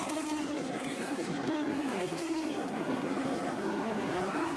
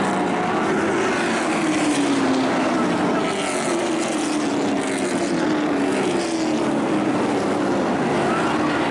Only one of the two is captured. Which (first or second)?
second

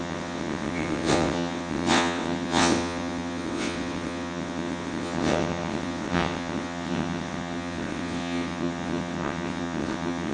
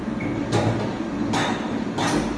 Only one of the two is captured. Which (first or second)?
second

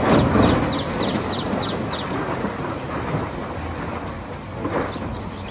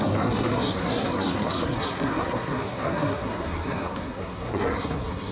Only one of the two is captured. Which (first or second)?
first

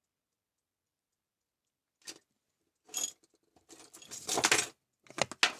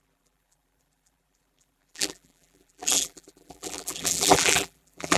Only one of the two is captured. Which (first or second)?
first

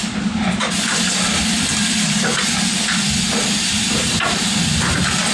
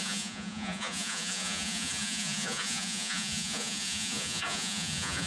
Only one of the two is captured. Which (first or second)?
first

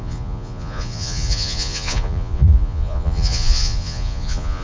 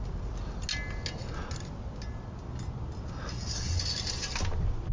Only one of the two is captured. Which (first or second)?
second